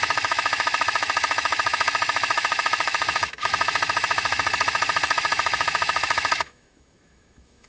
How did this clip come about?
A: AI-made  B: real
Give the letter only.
A